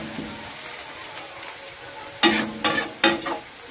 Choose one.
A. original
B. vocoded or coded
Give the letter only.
A